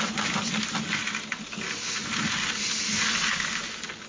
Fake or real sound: real